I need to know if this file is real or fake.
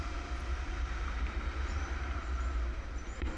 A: fake